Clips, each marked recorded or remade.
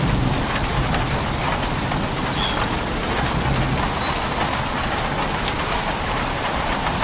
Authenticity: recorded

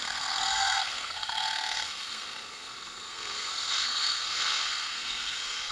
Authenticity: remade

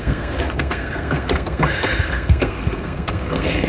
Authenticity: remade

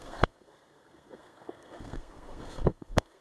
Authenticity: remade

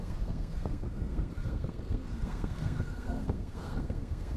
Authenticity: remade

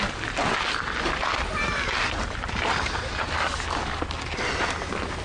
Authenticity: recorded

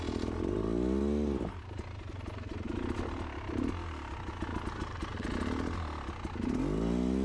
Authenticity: recorded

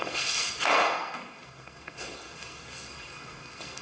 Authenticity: remade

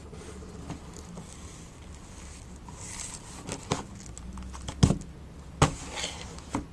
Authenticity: recorded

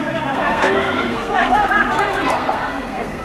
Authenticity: remade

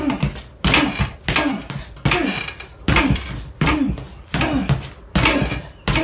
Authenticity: recorded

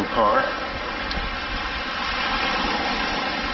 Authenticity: recorded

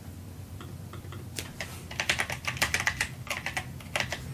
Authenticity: recorded